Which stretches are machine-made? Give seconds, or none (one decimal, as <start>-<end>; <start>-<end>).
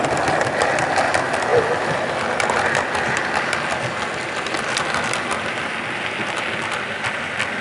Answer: none